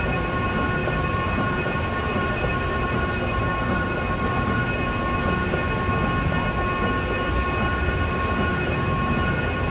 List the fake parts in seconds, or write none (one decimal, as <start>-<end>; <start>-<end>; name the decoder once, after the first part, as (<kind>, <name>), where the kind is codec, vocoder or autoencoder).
0.8-3.4 (vocoder, BigVGAN v2)